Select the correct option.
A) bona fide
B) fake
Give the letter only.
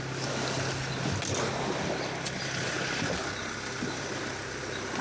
A